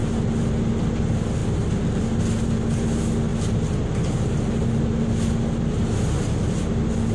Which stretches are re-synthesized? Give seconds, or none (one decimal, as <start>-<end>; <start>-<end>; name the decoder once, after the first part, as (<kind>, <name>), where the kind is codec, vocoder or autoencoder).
none